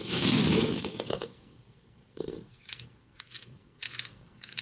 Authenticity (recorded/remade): remade